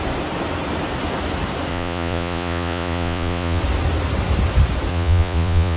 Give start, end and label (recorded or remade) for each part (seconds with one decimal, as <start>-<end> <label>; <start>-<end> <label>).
0.0-1.7 recorded; 1.7-3.6 remade; 3.6-4.9 recorded; 4.9-5.8 remade